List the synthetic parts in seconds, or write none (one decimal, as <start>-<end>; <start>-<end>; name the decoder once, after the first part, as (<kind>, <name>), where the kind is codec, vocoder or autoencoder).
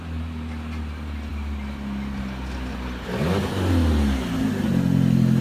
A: none